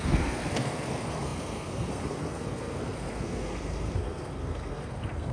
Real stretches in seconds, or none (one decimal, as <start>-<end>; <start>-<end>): none